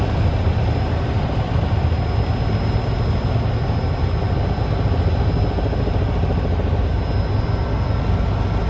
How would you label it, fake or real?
real